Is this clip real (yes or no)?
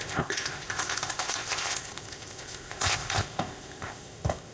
no